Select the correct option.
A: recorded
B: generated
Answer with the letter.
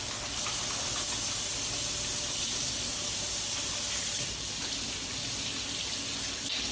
A